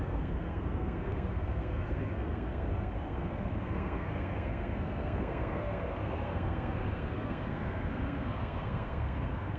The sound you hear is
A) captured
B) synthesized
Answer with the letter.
B